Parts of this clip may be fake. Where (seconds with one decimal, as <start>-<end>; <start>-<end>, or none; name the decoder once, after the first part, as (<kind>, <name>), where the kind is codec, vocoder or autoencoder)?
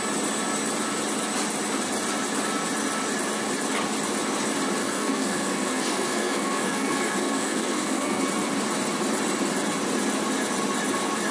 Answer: 4.8-8.2 (codec, SNAC)